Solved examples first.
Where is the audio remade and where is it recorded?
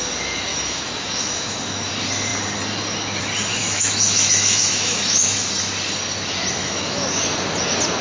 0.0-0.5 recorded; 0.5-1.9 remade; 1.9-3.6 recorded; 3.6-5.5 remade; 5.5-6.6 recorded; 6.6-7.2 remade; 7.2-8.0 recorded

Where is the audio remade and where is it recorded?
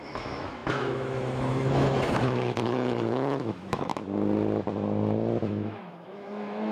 0.0-3.9 remade; 3.9-5.4 recorded; 5.4-6.7 remade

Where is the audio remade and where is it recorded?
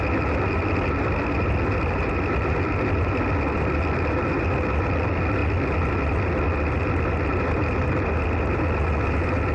0.0-9.5 recorded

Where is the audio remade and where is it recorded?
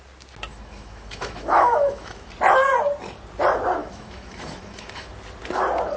0.0-0.5 recorded; 0.5-2.3 remade; 2.3-3.8 recorded; 3.8-5.1 remade; 5.1-6.0 recorded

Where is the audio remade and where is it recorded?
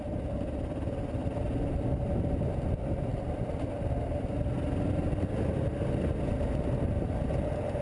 0.0-7.8 recorded